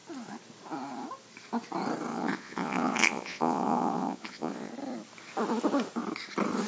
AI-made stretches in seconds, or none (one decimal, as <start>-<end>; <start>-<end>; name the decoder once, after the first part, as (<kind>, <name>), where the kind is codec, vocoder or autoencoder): 2.1-4.7 (vocoder, Vocos)